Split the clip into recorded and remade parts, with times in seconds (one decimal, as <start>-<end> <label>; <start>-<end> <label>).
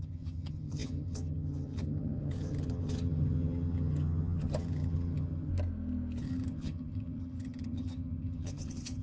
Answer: 0.0-5.5 remade; 5.5-6.2 recorded; 6.2-9.0 remade